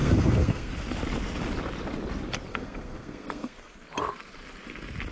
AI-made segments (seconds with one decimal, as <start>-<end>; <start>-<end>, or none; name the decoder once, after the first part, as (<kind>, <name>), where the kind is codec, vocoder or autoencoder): 0.0-0.7 (codec, SNAC); 2.5-3.7

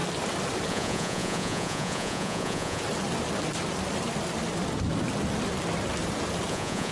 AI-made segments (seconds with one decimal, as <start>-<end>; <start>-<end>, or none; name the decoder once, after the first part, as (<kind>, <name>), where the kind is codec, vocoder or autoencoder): 0.7-2.8 (vocoder, Vocos); 6.5-6.9

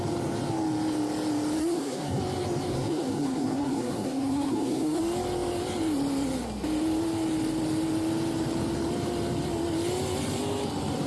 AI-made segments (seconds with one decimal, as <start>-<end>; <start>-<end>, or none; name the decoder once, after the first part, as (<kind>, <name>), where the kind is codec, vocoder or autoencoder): 1.6-2.2 (codec, SNAC); 2.7-5.0

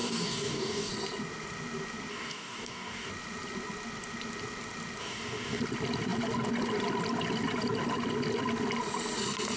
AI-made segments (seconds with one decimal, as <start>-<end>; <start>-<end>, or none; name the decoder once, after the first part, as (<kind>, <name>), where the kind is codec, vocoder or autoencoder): 0.0-0.9 (codec, DAC); 2.1-3.1; 5.0-5.6

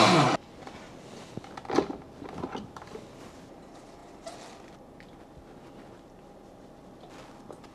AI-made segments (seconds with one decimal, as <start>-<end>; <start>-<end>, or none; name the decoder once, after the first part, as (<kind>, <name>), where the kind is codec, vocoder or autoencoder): none

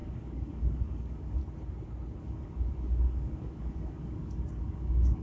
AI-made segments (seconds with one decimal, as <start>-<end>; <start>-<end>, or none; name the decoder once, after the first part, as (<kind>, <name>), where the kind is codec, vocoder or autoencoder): 0.0-1.4 (codec, DAC); 2.2-5.2

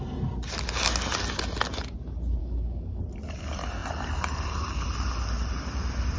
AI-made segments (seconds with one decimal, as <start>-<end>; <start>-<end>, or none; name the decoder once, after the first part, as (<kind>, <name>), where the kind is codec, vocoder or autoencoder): 2.4-3.0 (codec, DAC)

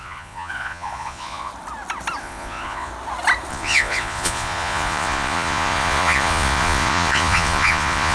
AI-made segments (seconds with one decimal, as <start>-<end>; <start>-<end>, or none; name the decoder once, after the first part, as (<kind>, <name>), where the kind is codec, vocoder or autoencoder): 0.0-1.5 (vocoder, Vocos); 2.2-2.9; 3.5-8.1